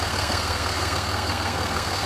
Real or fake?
fake